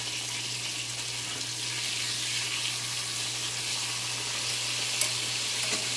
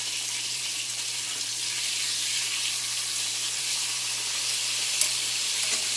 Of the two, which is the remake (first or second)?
second